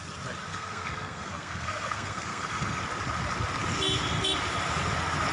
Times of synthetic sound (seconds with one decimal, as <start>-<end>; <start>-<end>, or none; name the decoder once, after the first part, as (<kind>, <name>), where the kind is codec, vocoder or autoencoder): 0.5-2.8 (codec, SNAC)